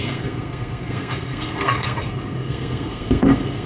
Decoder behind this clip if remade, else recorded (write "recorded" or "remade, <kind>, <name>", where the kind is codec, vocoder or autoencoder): remade, codec, SNAC